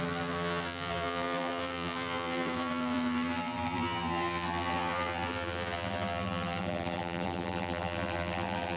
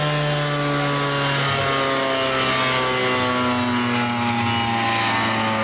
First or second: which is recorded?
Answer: second